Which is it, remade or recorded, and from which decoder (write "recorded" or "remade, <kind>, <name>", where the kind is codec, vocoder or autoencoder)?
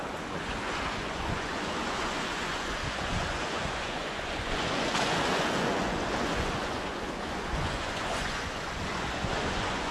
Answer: remade, vocoder, Vocos